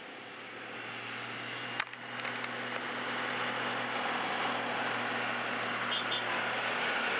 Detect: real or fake real